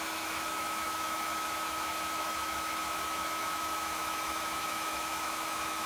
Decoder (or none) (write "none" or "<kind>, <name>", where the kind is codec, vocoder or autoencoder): autoencoder, DAC-VAE